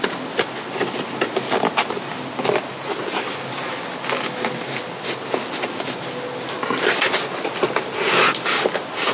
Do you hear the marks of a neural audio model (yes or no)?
no